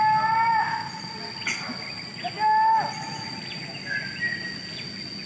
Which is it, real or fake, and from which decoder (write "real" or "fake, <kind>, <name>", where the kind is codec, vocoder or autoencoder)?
real